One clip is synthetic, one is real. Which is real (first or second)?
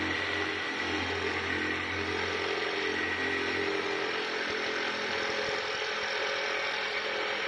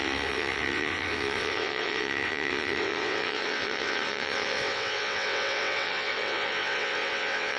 first